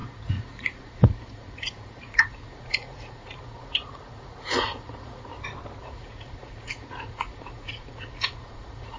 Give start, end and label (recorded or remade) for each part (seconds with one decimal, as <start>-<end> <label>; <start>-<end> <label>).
0.0-5.3 remade; 5.3-5.8 recorded; 5.8-9.0 remade